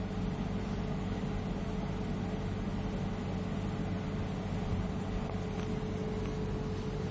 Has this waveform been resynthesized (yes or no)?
no